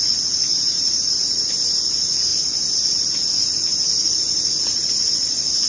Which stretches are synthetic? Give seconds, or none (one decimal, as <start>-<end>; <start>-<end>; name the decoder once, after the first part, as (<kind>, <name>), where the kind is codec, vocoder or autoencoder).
0.5-1.5 (vocoder, BigVGAN v2)